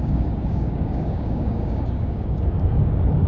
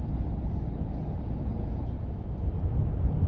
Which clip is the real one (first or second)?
second